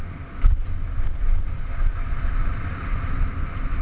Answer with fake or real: real